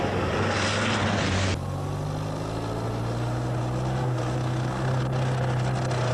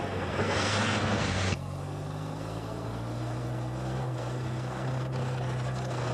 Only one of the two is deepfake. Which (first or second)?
second